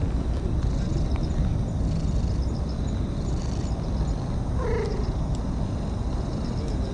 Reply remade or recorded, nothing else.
recorded